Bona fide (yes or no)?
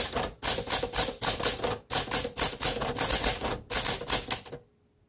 yes